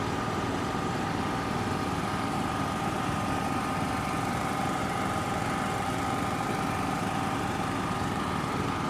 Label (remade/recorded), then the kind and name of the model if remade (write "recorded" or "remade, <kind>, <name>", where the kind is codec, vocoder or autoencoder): remade, vocoder, BigVGAN v2